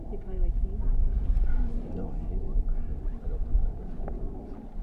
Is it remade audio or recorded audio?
recorded